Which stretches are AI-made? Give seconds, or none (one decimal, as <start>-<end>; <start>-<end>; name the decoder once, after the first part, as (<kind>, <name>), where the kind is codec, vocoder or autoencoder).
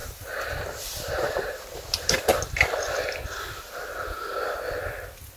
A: 0.0-2.3 (vocoder, BigVGAN v2)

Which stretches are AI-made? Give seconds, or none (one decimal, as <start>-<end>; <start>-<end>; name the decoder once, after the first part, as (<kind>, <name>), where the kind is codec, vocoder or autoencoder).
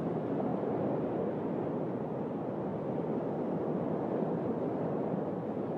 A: none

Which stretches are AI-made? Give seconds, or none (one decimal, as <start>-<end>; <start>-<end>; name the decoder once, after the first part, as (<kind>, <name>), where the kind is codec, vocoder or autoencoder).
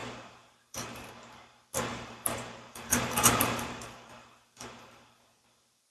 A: 0.0-1.1 (vocoder, BigVGAN v2); 1.9-5.4